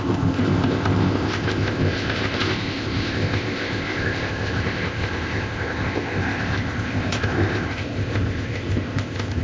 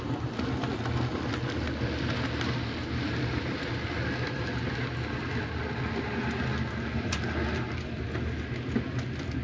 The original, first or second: second